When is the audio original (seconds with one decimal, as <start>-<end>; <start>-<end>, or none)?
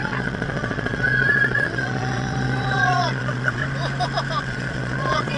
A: 3.6-4.4